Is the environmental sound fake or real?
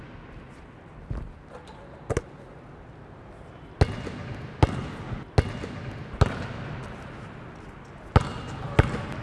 real